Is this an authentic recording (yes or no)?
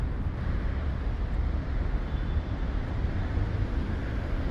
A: yes